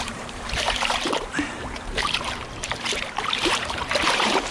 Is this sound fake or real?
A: fake